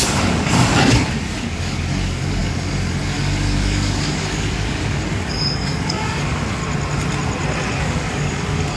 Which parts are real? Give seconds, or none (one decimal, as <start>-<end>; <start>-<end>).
6.6-7.8